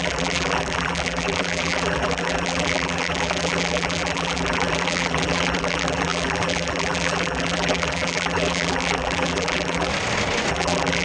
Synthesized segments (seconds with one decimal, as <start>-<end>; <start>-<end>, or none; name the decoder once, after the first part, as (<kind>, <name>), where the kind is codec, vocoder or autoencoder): 0.0-9.9 (vocoder, BigVGAN v2); 10.5-11.0